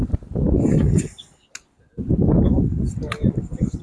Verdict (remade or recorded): recorded